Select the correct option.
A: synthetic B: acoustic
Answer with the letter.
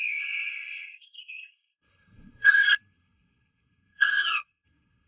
A